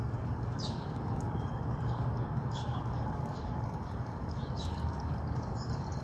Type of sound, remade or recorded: remade